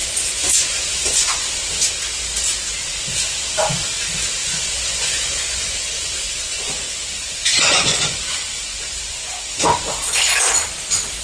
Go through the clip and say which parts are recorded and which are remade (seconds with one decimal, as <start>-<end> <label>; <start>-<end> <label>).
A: 0.0-1.5 remade; 1.5-4.4 recorded; 4.4-9.4 remade; 9.4-11.2 recorded